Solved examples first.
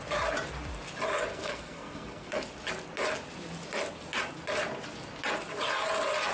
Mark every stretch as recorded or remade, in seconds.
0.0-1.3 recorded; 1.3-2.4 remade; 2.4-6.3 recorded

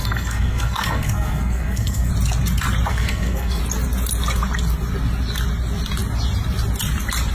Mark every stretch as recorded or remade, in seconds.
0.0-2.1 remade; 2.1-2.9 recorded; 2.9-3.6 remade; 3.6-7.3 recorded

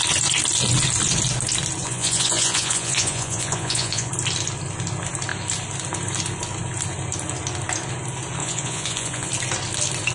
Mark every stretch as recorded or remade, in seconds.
0.0-1.8 recorded; 1.8-4.1 remade; 4.1-8.4 recorded; 8.4-9.3 remade; 9.3-10.1 recorded